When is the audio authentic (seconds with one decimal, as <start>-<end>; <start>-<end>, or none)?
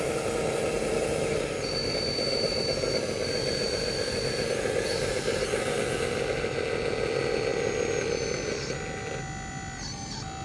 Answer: 0.0-10.4